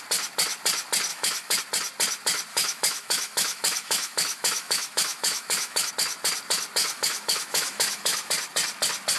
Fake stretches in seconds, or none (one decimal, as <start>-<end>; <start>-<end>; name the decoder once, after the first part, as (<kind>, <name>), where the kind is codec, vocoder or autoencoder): 1.1-1.6 (autoencoder, DAC-VAE); 2.5-5.9; 6.8-8.3